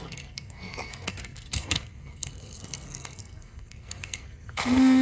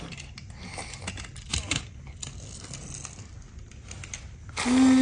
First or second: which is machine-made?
first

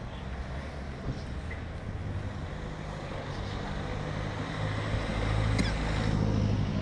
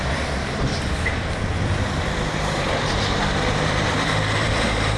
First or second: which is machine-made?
second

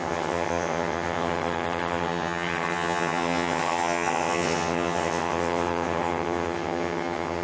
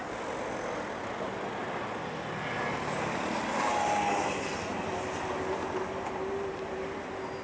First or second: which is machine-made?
first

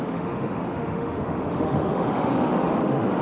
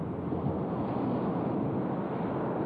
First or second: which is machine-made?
first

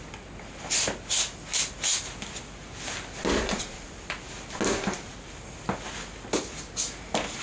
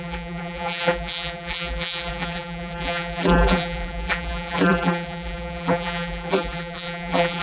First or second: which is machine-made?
second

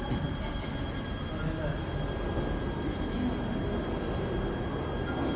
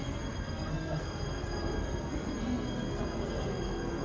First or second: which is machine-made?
second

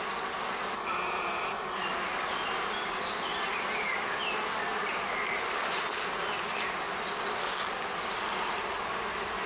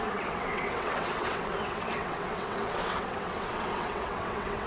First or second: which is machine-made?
second